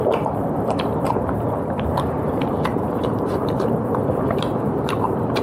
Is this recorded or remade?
remade